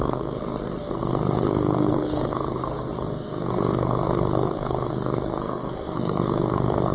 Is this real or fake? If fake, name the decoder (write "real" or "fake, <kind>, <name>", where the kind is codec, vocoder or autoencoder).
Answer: fake, codec, SNAC